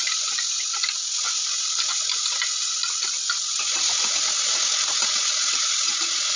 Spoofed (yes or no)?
no